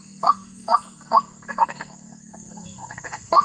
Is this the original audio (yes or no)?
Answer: no